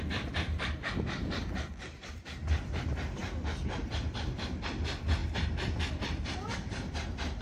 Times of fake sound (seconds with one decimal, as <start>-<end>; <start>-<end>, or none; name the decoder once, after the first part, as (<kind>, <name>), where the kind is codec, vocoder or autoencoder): 0.0-5.2 (vocoder, BigVGAN v2); 5.8-7.4